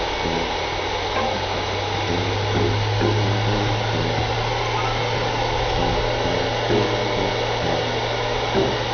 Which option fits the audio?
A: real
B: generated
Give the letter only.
A